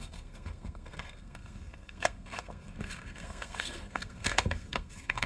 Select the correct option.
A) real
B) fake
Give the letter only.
B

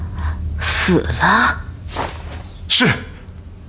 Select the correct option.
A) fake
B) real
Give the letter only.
B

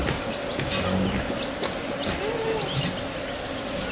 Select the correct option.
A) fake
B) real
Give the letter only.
B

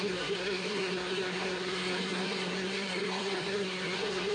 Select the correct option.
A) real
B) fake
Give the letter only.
B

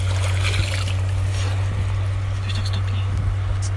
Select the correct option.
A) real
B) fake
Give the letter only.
A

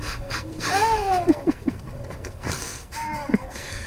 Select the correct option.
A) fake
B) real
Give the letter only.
A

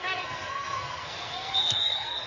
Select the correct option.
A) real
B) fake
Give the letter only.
B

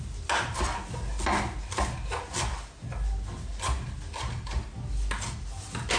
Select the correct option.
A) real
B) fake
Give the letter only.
A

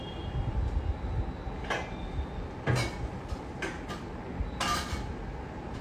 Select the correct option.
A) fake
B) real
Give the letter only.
B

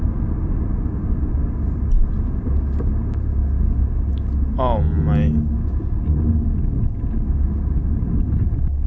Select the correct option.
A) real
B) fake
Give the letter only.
A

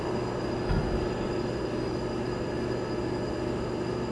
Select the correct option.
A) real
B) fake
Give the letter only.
A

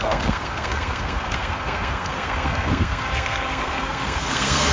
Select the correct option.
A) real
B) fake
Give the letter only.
B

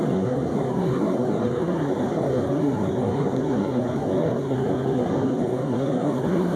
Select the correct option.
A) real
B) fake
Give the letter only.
B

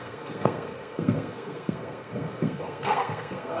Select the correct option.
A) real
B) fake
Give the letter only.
B